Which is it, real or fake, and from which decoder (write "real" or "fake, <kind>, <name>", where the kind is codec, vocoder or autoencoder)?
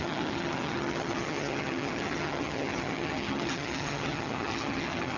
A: fake, vocoder, HiFi-GAN